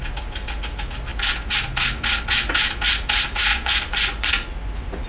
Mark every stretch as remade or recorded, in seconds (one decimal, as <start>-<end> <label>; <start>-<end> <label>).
0.0-3.5 recorded; 3.5-4.3 remade; 4.3-5.1 recorded